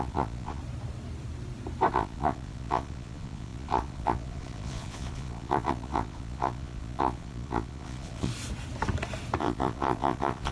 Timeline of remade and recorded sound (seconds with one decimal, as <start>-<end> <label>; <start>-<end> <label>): 0.0-0.6 remade; 0.6-1.9 recorded; 1.9-8.3 remade; 8.3-9.4 recorded; 9.4-10.5 remade